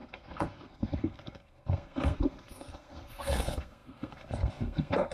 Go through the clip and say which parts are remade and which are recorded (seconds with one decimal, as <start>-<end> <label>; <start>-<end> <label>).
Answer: 0.0-5.1 remade